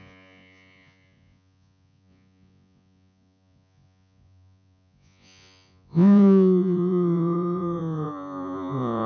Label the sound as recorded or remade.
remade